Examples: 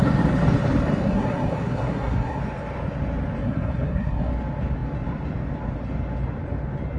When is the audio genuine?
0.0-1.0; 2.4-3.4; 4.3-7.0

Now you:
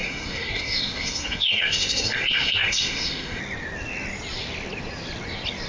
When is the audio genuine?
3.4-5.7

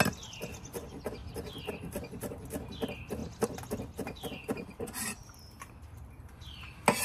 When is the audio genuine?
0.0-7.0

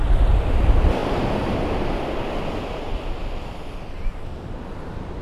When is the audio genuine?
0.0-5.2

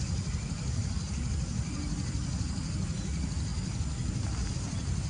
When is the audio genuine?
0.0-5.1

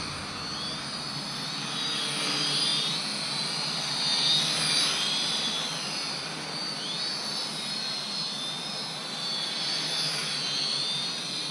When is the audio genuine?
0.0-11.5